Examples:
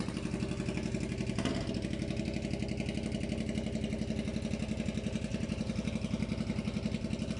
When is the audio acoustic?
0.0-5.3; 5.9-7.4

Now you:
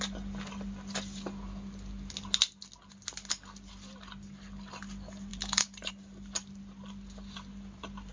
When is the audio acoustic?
0.0-5.3; 5.9-8.1

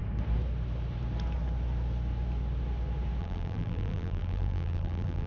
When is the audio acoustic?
0.0-3.2

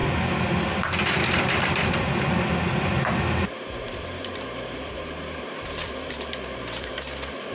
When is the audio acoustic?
0.0-3.7

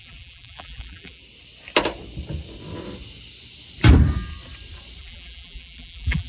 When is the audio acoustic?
1.2-5.0